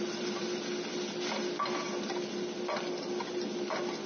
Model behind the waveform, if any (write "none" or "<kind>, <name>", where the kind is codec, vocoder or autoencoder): none